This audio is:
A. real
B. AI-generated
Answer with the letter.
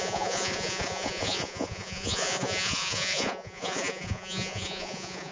B